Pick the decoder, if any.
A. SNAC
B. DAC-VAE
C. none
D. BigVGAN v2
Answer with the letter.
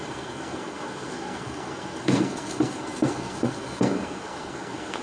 A